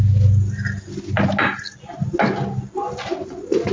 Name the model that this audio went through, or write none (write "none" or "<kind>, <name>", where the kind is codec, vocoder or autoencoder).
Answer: none